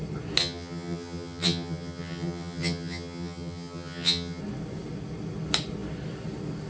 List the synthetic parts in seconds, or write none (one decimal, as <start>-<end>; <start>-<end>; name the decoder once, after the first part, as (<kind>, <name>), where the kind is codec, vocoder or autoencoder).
0.4-4.4 (vocoder, HiFi-GAN)